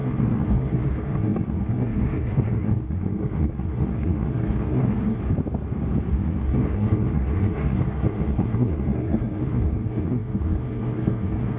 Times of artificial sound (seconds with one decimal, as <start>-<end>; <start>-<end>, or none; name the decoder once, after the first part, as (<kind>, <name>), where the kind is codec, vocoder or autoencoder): 0.0-5.2 (codec, SNAC); 6.1-11.6